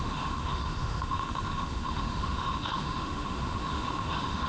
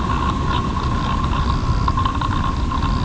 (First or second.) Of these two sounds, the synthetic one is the first